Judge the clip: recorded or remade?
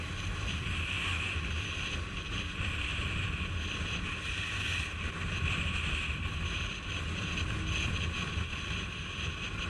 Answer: recorded